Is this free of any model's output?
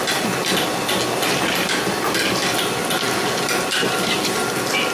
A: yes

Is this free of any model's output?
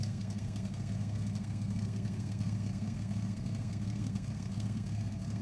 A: no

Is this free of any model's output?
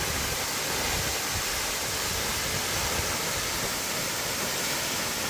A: yes